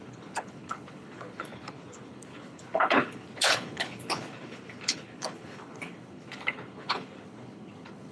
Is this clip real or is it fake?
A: fake